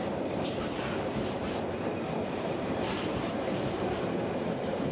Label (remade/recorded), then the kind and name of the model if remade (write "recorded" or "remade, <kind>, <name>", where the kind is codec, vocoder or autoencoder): remade, vocoder, BigVGAN v2